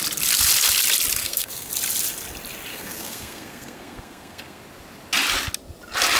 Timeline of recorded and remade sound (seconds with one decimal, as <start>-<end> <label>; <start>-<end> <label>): 0.0-1.2 recorded; 1.2-1.7 remade; 1.7-2.7 recorded; 2.7-4.6 remade; 4.6-6.2 recorded